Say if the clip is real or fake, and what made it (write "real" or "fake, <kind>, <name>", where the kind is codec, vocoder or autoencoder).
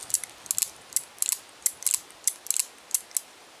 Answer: real